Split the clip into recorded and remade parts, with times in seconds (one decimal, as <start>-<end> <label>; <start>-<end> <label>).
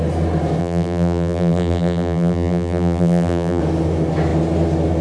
0.0-0.6 recorded; 0.6-3.6 remade; 3.6-5.0 recorded